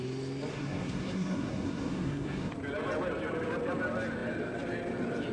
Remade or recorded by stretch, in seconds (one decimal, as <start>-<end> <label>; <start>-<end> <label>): 0.0-0.5 recorded; 0.5-2.5 remade; 2.5-5.3 recorded